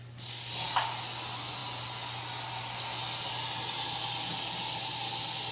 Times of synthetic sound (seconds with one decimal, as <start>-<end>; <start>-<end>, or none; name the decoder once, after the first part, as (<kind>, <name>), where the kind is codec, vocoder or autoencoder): none